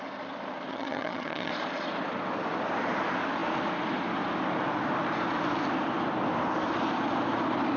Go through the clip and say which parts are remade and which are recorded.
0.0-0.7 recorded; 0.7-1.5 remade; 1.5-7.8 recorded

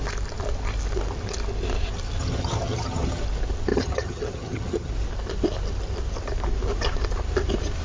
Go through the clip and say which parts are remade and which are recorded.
0.0-2.2 recorded; 2.2-3.2 remade; 3.2-3.7 recorded; 3.7-4.9 remade; 4.9-7.8 recorded

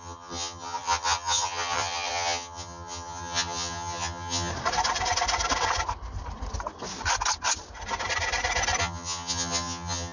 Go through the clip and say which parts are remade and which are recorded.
0.0-4.5 remade; 4.5-8.8 recorded; 8.8-10.1 remade

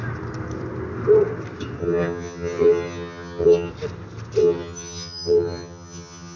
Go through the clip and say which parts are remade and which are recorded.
0.0-1.8 recorded; 1.8-3.7 remade; 3.7-4.4 recorded; 4.4-6.4 remade

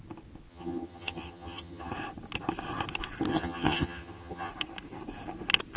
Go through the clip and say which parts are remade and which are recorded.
0.0-0.5 recorded; 0.5-1.9 remade; 1.9-3.3 recorded; 3.3-4.5 remade; 4.5-5.8 recorded

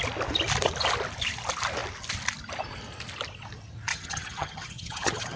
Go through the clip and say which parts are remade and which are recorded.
0.0-3.9 recorded; 3.9-5.4 remade

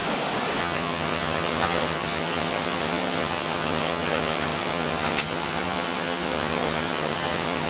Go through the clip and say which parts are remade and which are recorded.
0.0-0.6 recorded; 0.6-7.7 remade